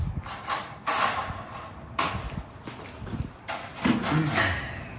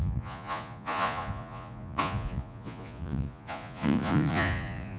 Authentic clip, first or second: first